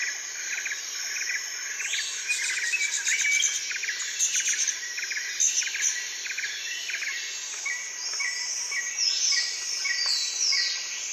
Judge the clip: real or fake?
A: real